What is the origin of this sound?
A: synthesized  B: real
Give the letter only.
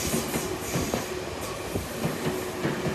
B